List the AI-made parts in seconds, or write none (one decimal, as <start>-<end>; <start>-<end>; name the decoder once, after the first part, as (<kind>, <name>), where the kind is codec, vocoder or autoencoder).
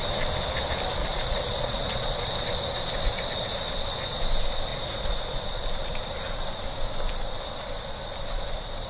1.0-2.3 (vocoder, Vocos); 4.7-5.4